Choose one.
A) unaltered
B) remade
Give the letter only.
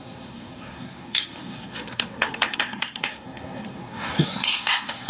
B